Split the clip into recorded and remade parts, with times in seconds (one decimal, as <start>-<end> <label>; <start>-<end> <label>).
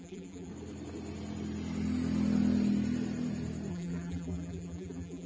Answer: 0.0-0.5 remade; 0.5-3.7 recorded; 3.7-5.3 remade